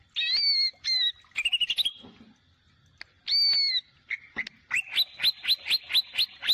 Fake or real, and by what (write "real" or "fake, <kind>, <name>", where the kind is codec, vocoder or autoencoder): real